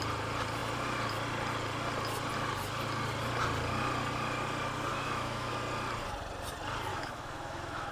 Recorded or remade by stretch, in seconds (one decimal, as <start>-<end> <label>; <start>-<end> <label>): 0.0-4.9 recorded; 4.9-5.5 remade; 5.5-6.9 recorded; 6.9-7.9 remade